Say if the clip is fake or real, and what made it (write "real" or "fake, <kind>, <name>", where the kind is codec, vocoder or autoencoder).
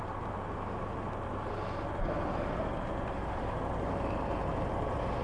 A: real